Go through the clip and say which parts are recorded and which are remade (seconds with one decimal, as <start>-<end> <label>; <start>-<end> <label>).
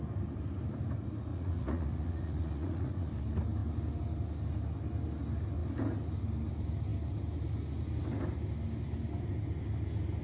0.0-1.3 recorded; 1.3-3.1 remade; 3.1-10.2 recorded